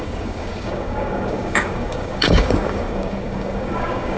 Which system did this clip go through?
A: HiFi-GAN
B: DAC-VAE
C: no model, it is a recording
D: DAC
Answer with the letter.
D